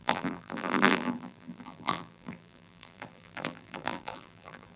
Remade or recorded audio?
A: remade